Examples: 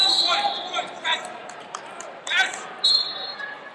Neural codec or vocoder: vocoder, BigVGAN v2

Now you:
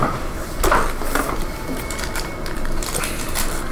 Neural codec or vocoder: none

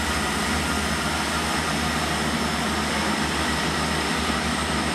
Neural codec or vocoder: none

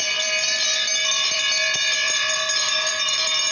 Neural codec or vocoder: vocoder, BigVGAN v2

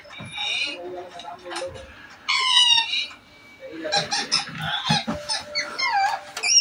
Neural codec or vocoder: none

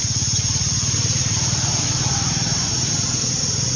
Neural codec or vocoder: none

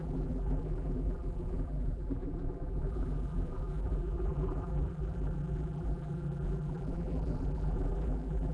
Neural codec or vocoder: vocoder, BigVGAN v2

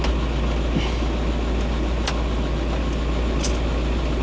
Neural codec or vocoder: none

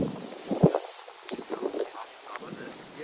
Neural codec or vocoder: none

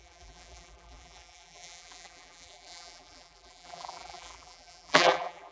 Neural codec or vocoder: vocoder, BigVGAN v2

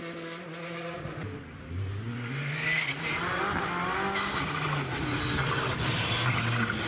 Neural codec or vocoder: none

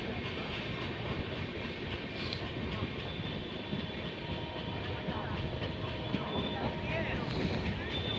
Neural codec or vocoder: none